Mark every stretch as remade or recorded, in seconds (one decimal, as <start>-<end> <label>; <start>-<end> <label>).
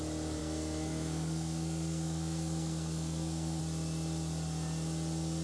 0.0-0.4 recorded; 0.4-3.6 remade; 3.6-5.4 recorded